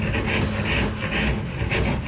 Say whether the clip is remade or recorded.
recorded